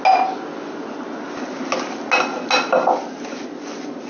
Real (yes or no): yes